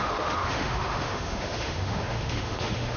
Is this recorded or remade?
remade